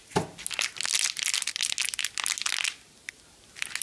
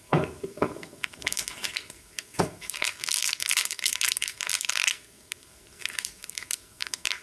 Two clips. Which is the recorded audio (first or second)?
first